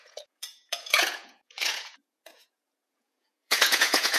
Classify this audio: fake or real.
fake